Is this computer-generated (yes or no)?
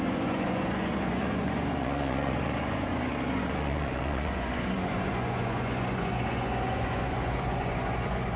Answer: yes